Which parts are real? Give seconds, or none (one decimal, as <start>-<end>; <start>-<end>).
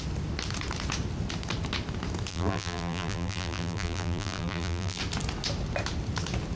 0.0-2.3; 5.0-6.6